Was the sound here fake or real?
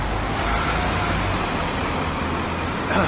real